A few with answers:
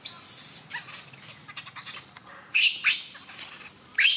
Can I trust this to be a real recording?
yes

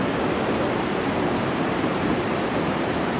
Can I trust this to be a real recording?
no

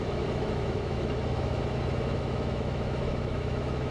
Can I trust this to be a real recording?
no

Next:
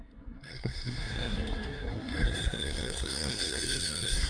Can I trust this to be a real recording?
no